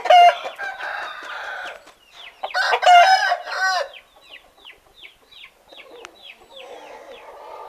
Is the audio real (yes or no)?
yes